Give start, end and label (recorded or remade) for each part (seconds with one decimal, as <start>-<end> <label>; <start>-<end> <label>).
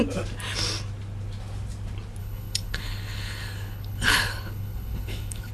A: 0.0-2.2 recorded; 2.2-5.5 remade